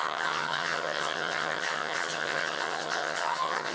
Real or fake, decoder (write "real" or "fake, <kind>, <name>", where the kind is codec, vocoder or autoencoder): fake, vocoder, HiFi-GAN